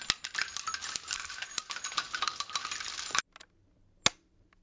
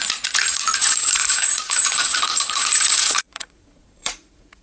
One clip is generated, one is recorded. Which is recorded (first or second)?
first